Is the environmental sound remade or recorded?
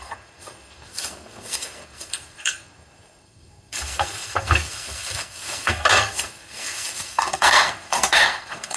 remade